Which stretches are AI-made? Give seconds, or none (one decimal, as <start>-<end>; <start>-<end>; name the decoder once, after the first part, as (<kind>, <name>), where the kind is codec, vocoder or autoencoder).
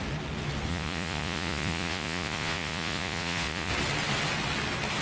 0.7-3.7 (vocoder, Vocos)